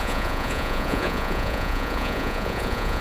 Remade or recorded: remade